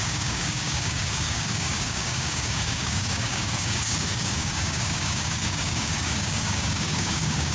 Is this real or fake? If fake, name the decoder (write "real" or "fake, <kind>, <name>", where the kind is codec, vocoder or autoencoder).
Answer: fake, codec, DAC